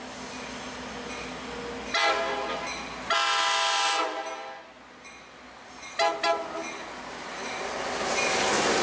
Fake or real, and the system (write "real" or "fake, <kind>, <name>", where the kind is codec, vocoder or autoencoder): real